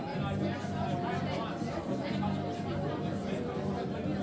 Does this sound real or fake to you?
real